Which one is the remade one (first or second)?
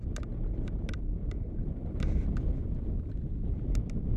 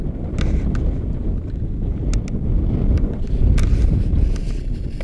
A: first